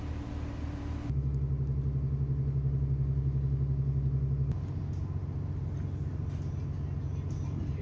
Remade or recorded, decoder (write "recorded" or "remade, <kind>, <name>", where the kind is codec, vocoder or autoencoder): recorded